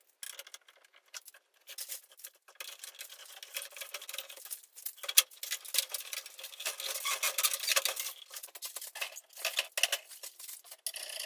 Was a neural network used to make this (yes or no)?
no